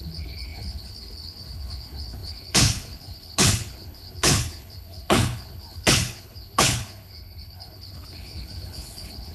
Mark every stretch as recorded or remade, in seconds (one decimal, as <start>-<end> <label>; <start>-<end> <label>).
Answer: 0.0-9.3 remade